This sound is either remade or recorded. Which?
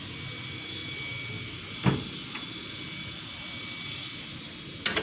recorded